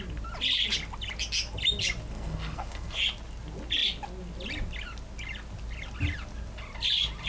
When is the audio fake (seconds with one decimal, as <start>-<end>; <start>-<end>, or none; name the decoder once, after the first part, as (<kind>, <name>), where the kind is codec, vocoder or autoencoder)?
2.1-3.0 (codec, SNAC)